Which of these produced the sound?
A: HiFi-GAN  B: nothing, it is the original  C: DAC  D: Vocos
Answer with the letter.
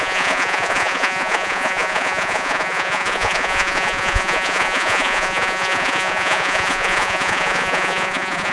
D